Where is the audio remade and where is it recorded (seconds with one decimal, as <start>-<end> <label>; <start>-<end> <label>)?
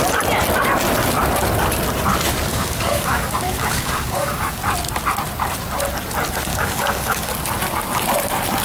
0.0-2.5 recorded; 2.5-4.6 remade; 4.6-6.5 recorded; 6.5-7.3 remade; 7.3-8.6 recorded